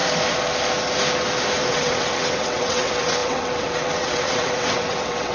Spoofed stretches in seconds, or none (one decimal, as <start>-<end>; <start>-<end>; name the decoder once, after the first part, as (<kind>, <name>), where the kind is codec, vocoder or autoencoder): 1.7-5.3 (vocoder, WaveNeXt)